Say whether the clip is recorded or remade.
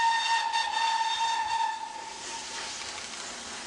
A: recorded